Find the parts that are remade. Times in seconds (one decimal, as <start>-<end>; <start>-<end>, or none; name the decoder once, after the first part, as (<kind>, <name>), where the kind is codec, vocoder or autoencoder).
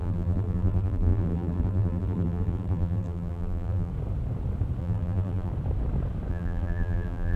0.0-3.9 (vocoder, BigVGAN v2); 4.8-5.5; 6.3-7.4